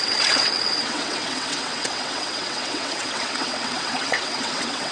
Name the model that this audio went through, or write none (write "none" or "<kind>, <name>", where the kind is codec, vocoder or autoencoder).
vocoder, WaveNeXt